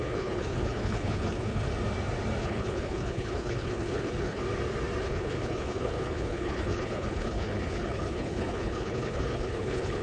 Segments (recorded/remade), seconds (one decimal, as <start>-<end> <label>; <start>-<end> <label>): 0.0-1.7 remade; 1.7-2.4 recorded; 2.4-4.4 remade; 4.4-5.0 recorded; 5.0-10.0 remade